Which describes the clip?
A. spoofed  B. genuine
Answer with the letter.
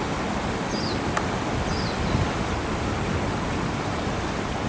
B